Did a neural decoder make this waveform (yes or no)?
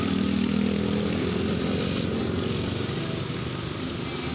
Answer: no